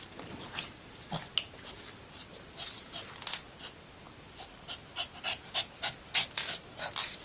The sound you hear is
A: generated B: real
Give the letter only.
B